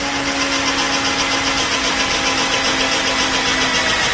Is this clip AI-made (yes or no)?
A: no